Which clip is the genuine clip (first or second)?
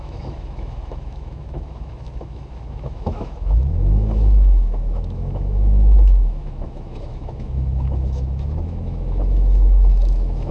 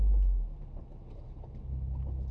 second